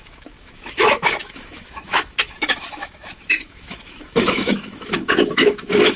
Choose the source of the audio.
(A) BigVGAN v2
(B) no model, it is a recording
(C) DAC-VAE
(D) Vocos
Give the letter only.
C